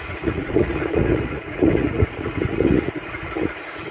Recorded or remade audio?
remade